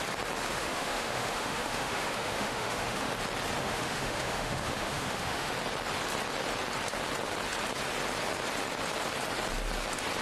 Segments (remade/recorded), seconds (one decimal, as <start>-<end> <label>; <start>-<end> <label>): 0.0-0.5 recorded; 0.5-3.1 remade; 3.1-3.6 recorded; 3.6-5.5 remade; 5.5-10.2 recorded